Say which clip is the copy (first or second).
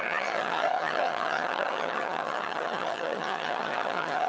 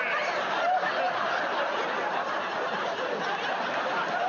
first